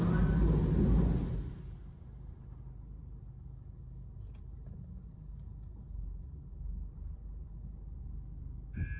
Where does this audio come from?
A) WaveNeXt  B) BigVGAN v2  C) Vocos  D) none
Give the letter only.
D